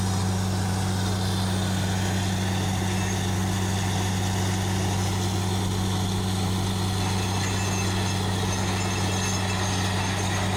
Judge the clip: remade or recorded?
recorded